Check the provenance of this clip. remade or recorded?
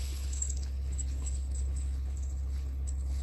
remade